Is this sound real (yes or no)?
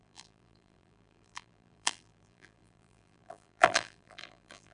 no